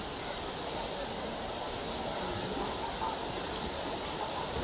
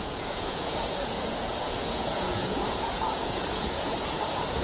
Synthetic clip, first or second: second